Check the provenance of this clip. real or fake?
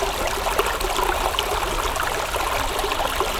real